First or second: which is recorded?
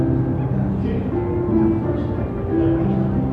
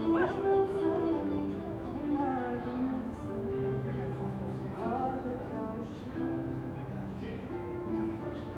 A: first